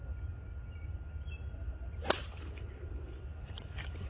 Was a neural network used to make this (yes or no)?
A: no